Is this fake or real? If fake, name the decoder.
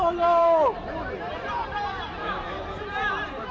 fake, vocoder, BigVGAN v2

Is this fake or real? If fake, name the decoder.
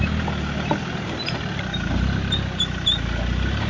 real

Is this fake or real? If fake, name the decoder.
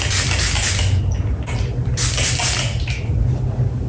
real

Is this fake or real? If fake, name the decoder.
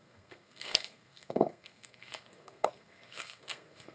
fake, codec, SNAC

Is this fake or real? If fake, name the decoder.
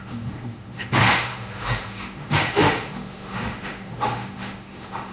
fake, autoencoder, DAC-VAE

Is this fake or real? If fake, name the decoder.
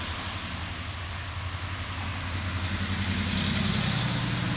real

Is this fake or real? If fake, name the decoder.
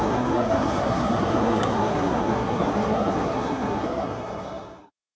fake, codec, SNAC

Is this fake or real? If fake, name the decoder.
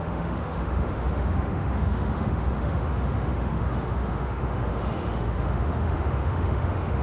fake, autoencoder, DAC-VAE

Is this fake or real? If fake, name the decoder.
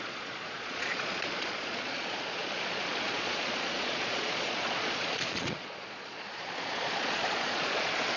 fake, vocoder, Vocos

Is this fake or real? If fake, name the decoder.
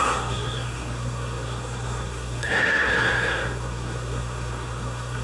fake, codec, SNAC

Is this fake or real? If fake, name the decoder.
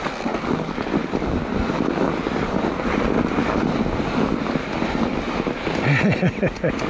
real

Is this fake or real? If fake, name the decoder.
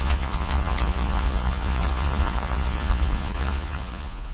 fake, vocoder, Vocos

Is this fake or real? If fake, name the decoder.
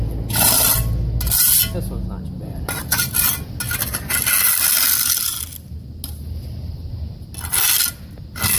real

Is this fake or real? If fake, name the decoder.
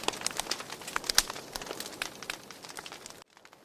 real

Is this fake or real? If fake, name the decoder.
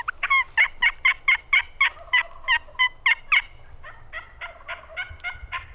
real